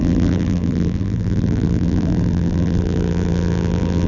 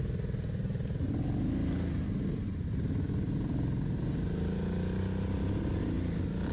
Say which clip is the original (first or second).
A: second